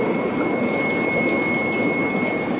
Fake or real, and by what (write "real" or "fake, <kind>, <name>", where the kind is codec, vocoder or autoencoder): real